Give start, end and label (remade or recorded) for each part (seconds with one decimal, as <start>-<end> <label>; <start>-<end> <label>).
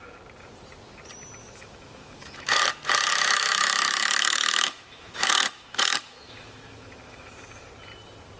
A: 0.0-1.4 recorded; 1.4-2.6 remade; 2.6-3.1 recorded; 3.1-7.7 remade; 7.7-8.4 recorded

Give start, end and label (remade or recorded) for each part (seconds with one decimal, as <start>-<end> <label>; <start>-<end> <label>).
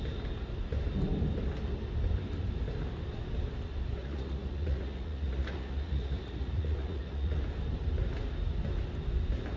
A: 0.0-4.0 recorded; 4.0-7.4 remade; 7.4-9.6 recorded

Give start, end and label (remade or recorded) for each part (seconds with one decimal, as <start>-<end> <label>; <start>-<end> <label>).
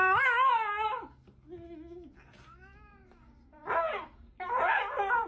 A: 0.0-5.3 recorded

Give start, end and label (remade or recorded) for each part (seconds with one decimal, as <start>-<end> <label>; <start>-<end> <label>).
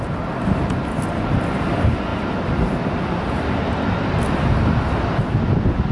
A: 0.0-5.9 recorded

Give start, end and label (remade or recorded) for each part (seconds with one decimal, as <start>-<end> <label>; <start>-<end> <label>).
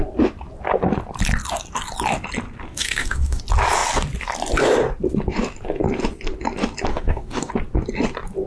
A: 0.0-2.7 recorded; 2.7-3.4 remade; 3.4-6.9 recorded; 6.9-7.5 remade; 7.5-8.5 recorded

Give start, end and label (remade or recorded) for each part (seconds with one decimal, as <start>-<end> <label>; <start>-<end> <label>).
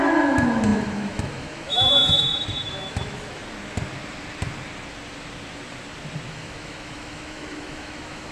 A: 0.0-3.4 remade; 3.4-6.3 recorded; 6.3-8.3 remade